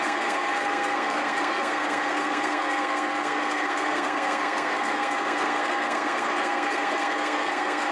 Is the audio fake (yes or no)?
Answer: yes